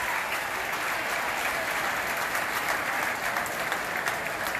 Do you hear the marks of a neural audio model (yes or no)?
no